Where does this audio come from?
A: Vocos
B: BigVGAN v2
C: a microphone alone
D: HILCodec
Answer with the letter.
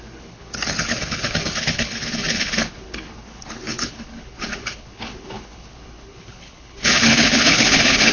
D